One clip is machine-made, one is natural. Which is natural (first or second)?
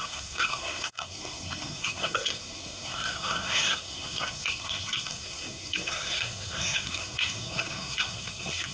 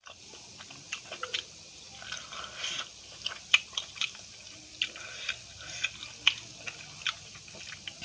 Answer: second